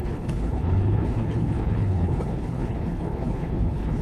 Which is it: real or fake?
fake